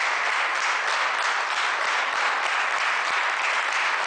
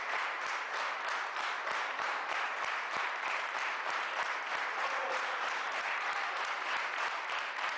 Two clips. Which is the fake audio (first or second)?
second